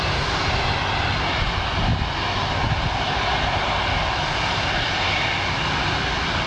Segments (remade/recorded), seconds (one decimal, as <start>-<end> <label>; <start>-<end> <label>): 0.0-6.5 recorded